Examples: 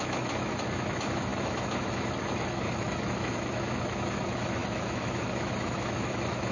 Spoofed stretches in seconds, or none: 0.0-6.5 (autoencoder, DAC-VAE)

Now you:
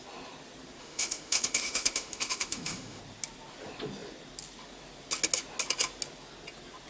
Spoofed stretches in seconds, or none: 0.8-3.0 (autoencoder, DAC-VAE)

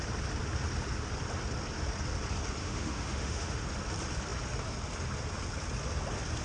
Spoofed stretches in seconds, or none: 2.6-3.6 (autoencoder, DAC-VAE)

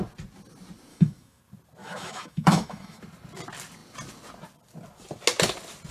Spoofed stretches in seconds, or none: 0.9-1.4 (autoencoder, DAC-VAE); 1.8-3.0

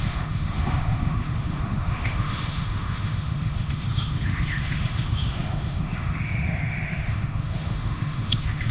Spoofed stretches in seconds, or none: 0.0-8.7 (autoencoder, DAC-VAE)

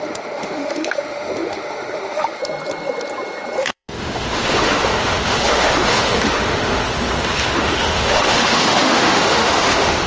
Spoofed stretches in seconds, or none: 0.0-2.4 (autoencoder, DAC-VAE); 3.6-10.1

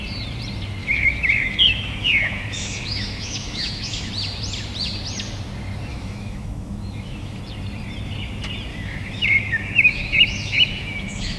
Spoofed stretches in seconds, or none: 0.8-4.1 (autoencoder, DAC-VAE); 5.9-7.4; 8.7-11.4